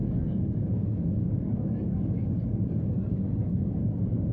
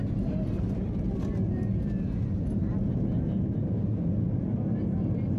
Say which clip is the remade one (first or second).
first